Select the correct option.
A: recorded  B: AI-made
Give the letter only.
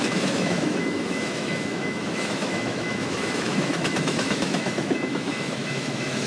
B